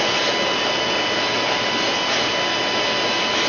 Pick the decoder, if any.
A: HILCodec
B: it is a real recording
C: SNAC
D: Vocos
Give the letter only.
B